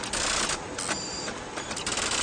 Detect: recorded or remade recorded